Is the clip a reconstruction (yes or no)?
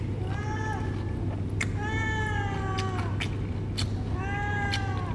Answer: no